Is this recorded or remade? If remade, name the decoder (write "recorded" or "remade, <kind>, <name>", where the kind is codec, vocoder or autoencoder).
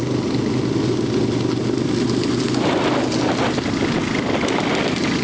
recorded